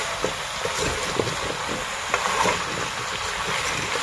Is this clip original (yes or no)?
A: yes